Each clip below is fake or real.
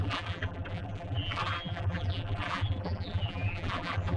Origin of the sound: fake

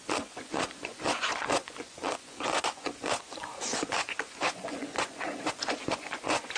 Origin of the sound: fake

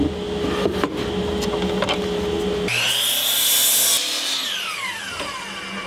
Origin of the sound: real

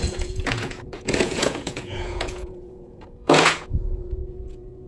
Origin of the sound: fake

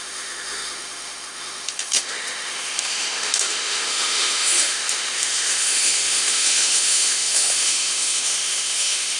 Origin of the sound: fake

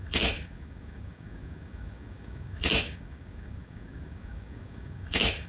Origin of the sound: fake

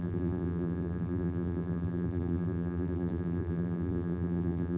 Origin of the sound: fake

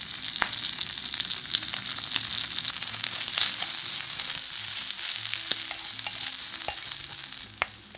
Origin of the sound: real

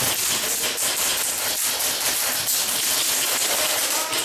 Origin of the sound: real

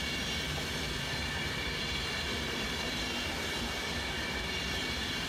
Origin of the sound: real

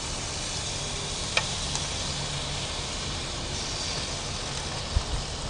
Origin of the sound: real